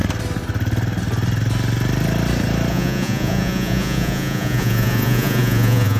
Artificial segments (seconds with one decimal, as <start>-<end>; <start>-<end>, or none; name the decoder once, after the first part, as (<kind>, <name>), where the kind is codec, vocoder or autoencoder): 2.7-6.0 (vocoder, Vocos)